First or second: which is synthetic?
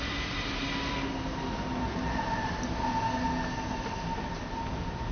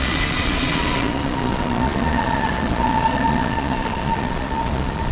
second